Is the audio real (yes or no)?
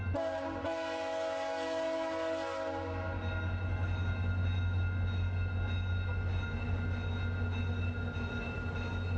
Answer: yes